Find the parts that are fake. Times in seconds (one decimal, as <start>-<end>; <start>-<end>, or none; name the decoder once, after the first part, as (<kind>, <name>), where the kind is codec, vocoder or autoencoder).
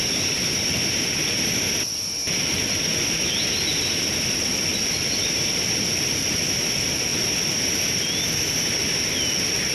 none